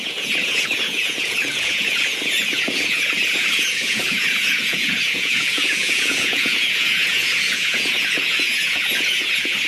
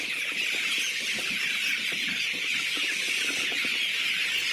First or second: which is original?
second